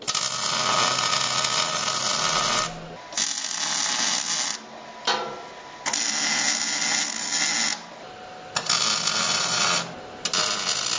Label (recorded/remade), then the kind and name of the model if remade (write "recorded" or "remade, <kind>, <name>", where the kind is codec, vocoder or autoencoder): recorded